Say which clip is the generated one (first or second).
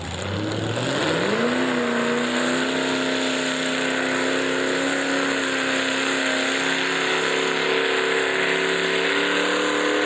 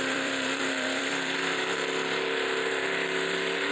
second